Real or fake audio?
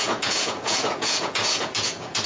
fake